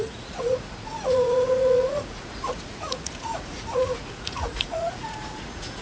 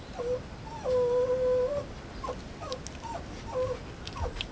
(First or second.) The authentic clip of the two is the second